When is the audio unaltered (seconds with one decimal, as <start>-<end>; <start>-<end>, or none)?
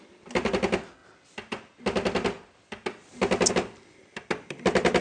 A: 0.0-5.0